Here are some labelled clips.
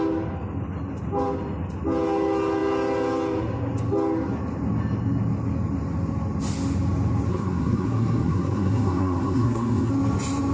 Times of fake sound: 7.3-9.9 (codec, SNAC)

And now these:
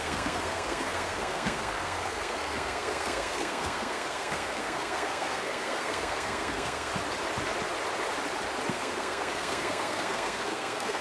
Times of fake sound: 0.0-6.9 (codec, SNAC); 8.7-11.0

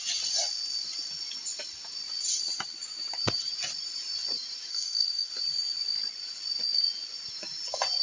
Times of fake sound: 4.7-5.3 (codec, SNAC)

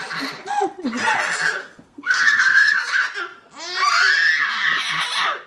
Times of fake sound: 1.6-2.7 (codec, SNAC)

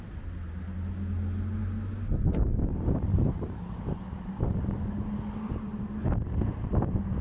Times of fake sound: none

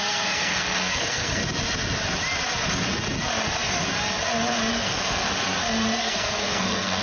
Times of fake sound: 0.0-1.4 (codec, SNAC); 4.7-5.3; 6.0-7.0

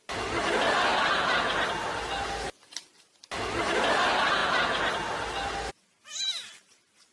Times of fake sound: none